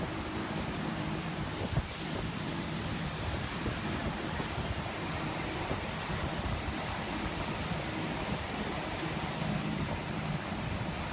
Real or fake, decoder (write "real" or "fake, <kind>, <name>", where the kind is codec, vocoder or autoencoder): fake, vocoder, BigVGAN v2